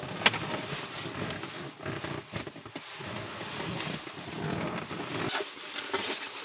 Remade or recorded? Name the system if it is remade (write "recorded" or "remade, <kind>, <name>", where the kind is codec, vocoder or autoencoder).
recorded